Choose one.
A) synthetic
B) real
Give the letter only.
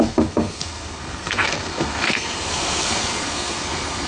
A